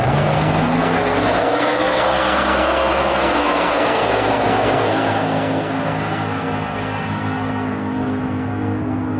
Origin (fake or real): fake